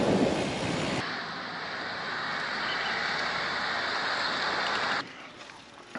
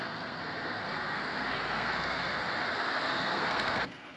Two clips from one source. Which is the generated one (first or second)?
second